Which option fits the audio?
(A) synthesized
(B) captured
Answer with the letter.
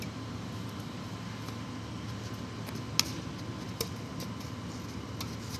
B